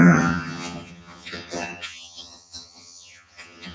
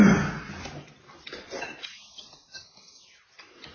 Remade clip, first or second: first